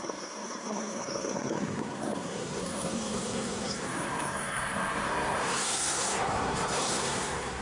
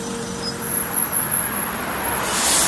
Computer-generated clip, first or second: first